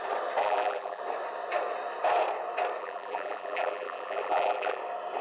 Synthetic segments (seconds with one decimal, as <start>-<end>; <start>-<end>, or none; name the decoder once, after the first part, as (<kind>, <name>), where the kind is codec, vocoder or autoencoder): 0.4-1.0 (vocoder, BigVGAN v2); 2.8-4.8